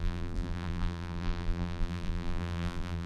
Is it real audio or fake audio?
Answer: fake